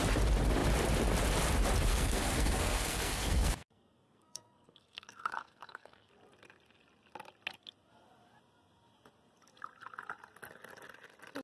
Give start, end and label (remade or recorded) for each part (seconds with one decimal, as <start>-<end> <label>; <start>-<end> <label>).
0.0-1.9 recorded; 1.9-6.1 remade; 6.1-11.4 recorded

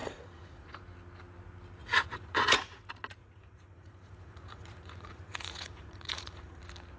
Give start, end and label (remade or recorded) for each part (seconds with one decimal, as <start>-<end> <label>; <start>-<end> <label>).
0.0-0.8 remade; 0.8-1.8 recorded; 1.8-2.8 remade; 2.8-3.2 recorded; 3.2-6.6 remade; 6.6-7.0 recorded

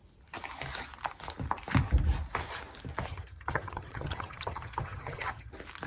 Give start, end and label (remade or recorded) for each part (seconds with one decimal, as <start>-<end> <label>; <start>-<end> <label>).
0.0-3.1 recorded; 3.1-5.5 remade; 5.5-5.9 recorded

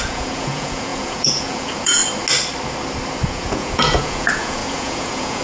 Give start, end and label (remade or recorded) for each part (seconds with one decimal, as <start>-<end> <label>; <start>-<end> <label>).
0.0-2.0 remade; 2.0-3.3 recorded; 3.3-5.4 remade